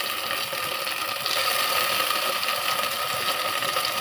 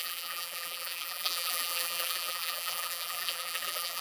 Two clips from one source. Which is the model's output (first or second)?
second